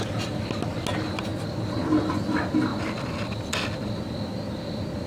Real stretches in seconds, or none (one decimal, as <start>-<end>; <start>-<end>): 0.0-5.1